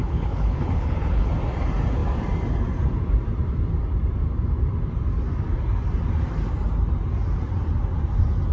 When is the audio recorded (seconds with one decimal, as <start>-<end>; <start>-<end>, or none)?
1.3-8.5